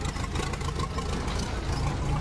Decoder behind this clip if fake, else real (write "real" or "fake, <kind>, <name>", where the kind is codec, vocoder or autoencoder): real